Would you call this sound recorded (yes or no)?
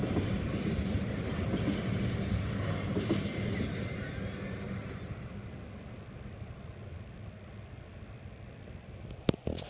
yes